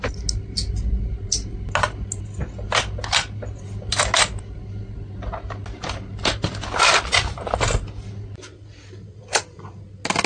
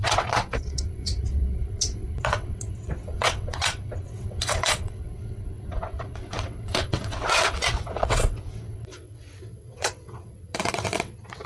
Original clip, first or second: first